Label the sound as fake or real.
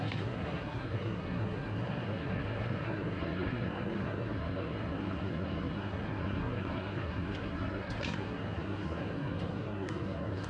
fake